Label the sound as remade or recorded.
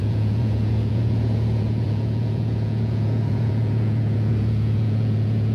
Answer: remade